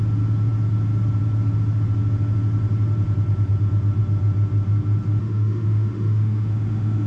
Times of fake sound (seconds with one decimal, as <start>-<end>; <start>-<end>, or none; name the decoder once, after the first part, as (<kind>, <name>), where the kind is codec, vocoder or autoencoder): 5.2-7.1 (autoencoder, DAC-VAE)